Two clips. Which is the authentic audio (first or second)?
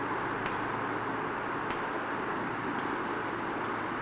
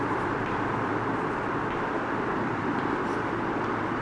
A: first